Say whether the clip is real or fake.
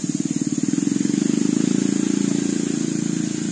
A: real